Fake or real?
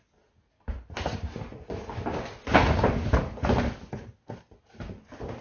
real